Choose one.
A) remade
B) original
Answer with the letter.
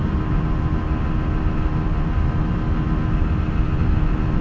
B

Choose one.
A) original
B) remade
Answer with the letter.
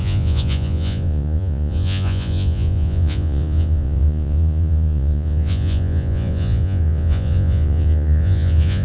B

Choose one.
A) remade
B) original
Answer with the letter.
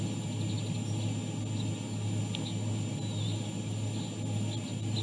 B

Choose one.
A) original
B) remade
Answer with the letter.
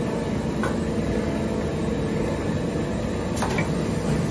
A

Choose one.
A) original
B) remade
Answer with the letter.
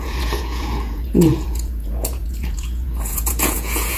B